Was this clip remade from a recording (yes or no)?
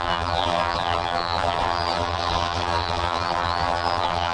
yes